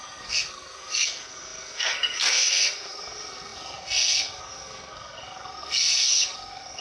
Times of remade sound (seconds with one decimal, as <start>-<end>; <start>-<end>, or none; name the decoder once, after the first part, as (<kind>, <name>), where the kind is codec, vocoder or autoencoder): 0.0-6.8 (codec, SNAC)